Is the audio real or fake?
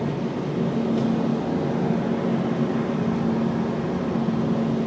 real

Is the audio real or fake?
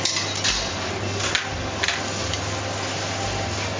real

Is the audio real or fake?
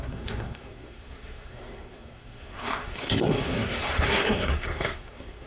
fake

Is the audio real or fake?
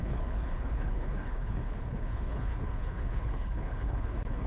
fake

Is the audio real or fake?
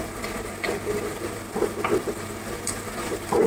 fake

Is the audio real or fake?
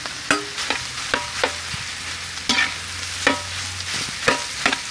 real